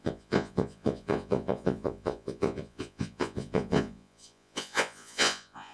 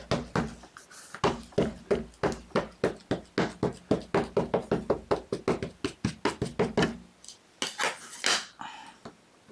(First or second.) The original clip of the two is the second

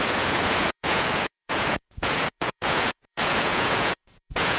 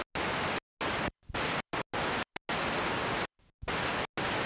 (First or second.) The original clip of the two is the second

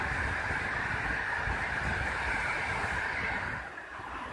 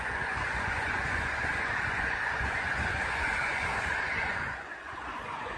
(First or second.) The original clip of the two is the first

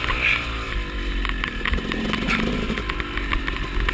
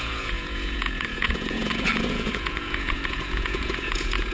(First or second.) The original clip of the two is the first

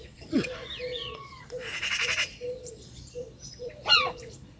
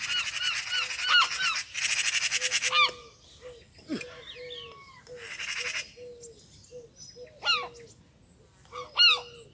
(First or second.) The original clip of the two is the second